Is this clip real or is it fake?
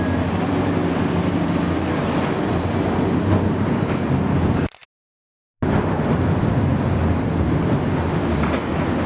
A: real